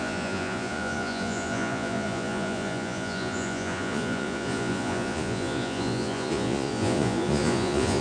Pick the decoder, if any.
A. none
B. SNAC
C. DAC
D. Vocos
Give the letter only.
D